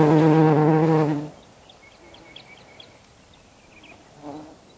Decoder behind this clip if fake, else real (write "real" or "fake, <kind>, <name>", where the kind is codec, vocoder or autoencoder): real